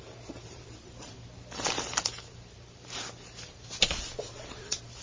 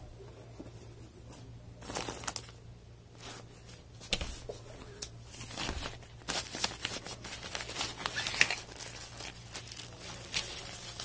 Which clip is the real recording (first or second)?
second